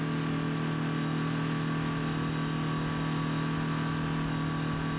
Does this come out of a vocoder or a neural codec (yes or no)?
no